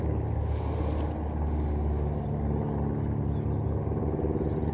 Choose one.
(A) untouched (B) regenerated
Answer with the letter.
A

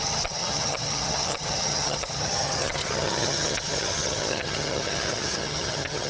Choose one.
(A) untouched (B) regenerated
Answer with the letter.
B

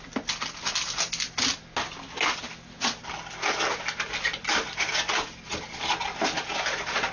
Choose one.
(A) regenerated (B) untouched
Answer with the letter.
B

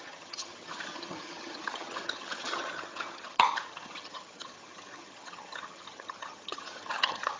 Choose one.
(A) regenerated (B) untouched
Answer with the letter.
A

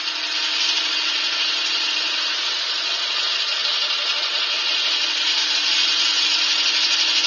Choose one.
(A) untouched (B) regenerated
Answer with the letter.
A